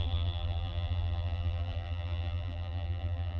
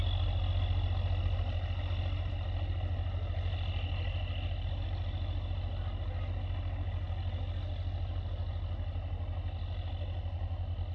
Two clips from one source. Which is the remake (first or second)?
first